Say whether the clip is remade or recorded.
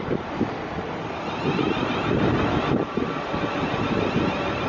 recorded